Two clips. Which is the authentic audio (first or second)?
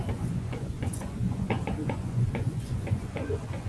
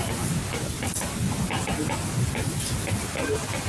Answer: second